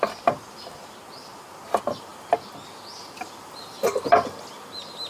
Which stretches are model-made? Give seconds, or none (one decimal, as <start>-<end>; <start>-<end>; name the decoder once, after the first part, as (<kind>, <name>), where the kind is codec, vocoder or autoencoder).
2.1-4.4 (vocoder, BigVGAN v2)

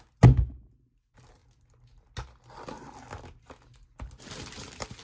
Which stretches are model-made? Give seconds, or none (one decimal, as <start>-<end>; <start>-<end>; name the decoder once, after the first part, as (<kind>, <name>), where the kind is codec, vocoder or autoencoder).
none

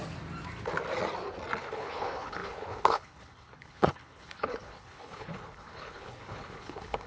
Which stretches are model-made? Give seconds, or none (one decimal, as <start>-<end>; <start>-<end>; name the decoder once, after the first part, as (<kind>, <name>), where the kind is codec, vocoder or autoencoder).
1.6-7.1 (codec, HILCodec)

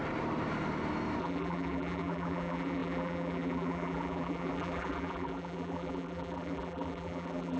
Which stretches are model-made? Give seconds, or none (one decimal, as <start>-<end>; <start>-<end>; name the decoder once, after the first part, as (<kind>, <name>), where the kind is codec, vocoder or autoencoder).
1.2-7.6 (vocoder, BigVGAN v2)